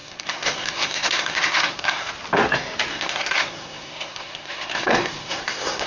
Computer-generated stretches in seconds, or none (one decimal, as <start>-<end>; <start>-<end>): 0.0-2.1; 2.9-5.9